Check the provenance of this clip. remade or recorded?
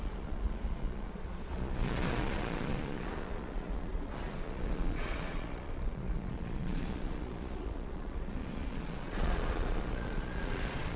remade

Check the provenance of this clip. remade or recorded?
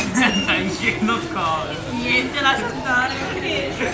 recorded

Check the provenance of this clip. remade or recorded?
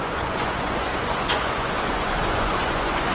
remade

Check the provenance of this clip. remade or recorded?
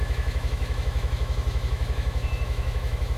remade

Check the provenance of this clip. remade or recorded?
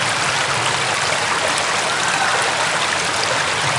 recorded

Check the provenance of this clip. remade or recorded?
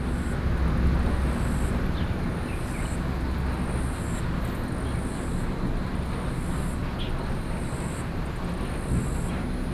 recorded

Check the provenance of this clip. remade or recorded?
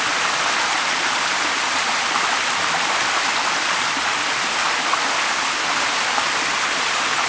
recorded